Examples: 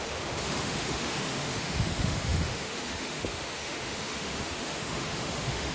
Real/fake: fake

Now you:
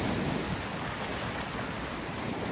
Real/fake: real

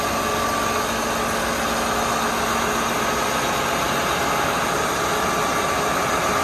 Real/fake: real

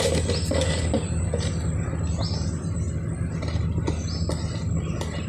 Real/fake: real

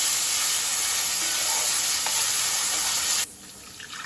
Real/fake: real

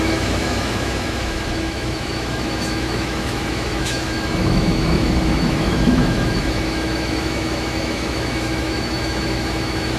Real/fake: fake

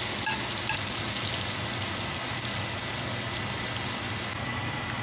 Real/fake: real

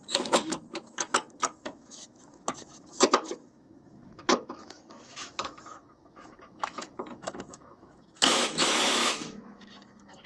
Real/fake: fake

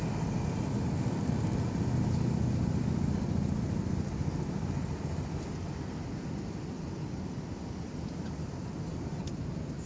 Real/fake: real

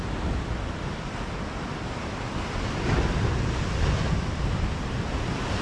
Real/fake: real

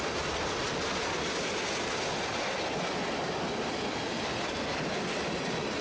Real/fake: real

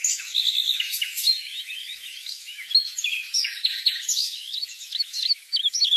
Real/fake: fake